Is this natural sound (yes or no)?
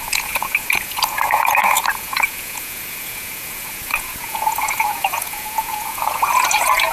no